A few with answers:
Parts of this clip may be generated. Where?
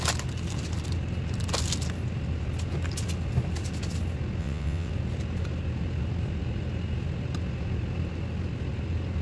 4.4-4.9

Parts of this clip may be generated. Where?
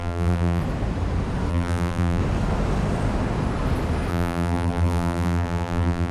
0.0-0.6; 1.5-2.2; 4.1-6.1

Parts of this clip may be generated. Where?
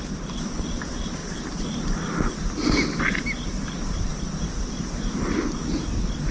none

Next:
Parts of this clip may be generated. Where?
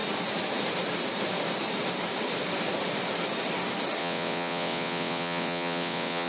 4.0-6.3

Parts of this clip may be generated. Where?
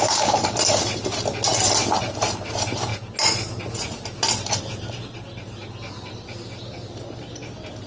none